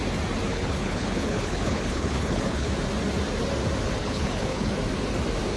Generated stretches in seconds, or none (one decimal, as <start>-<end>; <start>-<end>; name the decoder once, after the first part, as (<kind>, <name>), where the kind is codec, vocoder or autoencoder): 0.5-2.7 (codec, HILCodec); 4.0-4.7